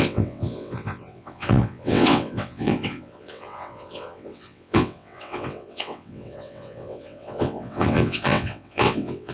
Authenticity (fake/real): fake